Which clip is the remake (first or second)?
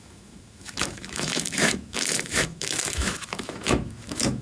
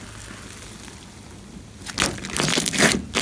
first